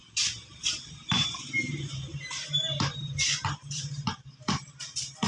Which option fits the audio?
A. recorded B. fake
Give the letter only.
B